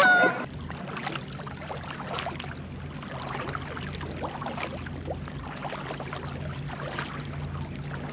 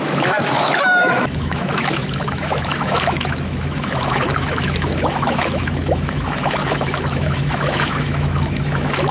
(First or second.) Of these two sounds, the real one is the first